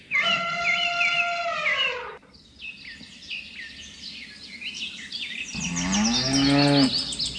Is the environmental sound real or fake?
real